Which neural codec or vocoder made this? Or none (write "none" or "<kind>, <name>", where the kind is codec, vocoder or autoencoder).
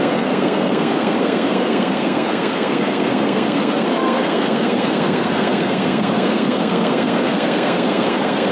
codec, SNAC